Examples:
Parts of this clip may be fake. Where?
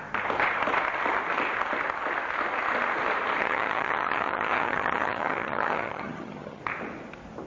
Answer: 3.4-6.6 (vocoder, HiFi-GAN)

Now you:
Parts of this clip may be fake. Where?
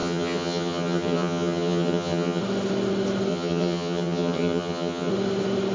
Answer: 0.0-2.4 (vocoder, HiFi-GAN); 3.3-5.1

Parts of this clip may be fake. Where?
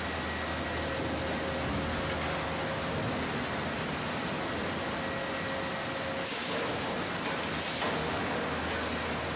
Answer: none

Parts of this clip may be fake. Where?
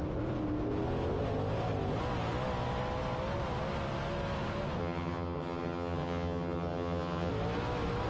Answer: 4.8-7.3 (vocoder, HiFi-GAN)